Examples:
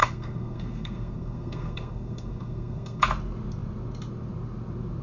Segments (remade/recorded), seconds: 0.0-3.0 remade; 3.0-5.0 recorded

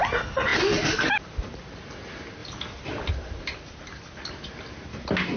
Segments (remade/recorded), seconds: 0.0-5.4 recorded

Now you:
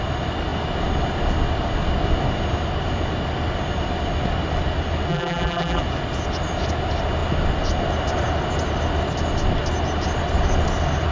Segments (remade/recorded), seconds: 0.0-5.1 recorded; 5.1-5.8 remade; 5.8-11.1 recorded

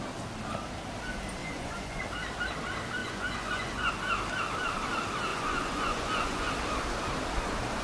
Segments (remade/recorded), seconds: 0.0-1.4 recorded; 1.4-2.0 remade; 2.0-3.0 recorded; 3.0-3.9 remade; 3.9-5.3 recorded; 5.3-6.5 remade; 6.5-7.8 recorded

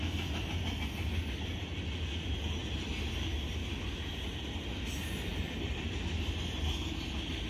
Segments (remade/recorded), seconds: 0.0-5.3 recorded; 5.3-5.9 remade; 5.9-7.5 recorded